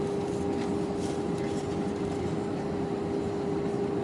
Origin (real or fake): real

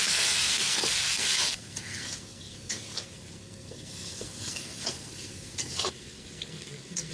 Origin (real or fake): fake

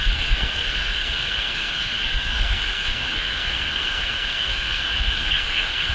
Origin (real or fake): fake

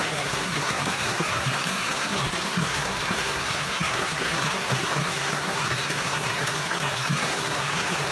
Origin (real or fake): fake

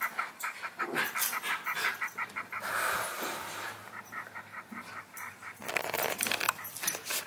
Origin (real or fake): real